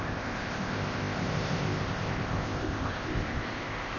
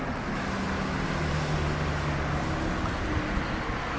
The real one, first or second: second